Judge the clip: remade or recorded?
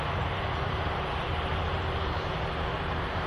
remade